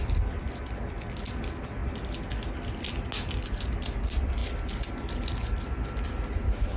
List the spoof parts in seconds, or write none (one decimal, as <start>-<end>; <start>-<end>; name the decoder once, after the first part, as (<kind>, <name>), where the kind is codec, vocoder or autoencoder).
none

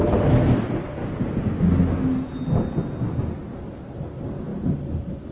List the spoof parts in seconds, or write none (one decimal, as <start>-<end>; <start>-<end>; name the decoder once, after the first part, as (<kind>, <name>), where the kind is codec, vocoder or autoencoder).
1.0-1.6 (codec, DAC)

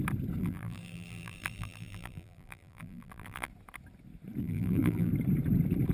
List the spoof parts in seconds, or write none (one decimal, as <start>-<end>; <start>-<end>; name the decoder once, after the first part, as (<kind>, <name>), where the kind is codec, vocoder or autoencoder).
0.4-3.5 (vocoder, BigVGAN v2); 4.4-5.1

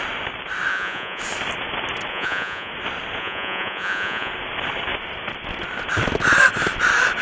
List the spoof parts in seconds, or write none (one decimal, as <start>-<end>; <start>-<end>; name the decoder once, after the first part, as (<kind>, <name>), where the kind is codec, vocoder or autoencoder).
0.7-1.2 (vocoder, Vocos); 2.1-2.7; 3.2-4.3

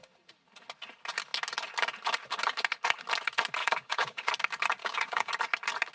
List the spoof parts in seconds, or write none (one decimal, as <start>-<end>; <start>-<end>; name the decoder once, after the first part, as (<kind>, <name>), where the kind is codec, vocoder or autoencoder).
3.6-4.3 (codec, DAC); 4.8-5.3

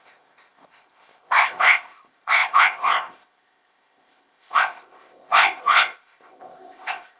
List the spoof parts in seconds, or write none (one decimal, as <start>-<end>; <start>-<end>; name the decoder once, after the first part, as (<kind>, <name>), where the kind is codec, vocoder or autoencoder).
0.0-7.2 (codec, ZipCodec)